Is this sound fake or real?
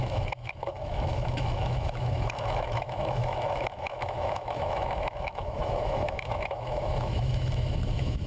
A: fake